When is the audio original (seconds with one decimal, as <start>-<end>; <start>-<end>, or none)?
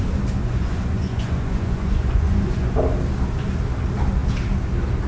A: 0.0-0.4; 2.8-5.1